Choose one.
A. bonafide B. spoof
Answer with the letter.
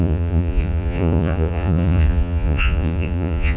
B